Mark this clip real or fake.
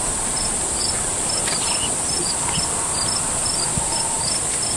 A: fake